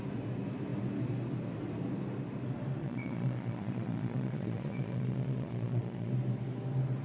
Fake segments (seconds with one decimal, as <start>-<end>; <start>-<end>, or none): 2.8-6.1